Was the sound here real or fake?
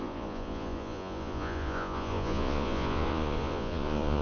fake